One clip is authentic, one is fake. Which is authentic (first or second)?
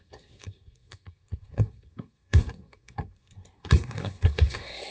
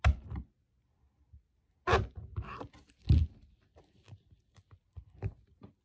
second